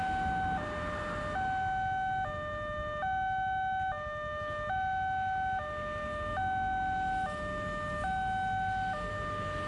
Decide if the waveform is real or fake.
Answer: real